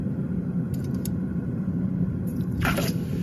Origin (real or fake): fake